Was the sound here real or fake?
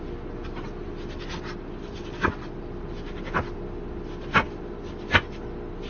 real